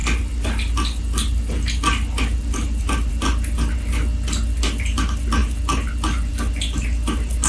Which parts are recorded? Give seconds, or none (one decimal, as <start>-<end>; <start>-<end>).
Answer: 0.0-7.5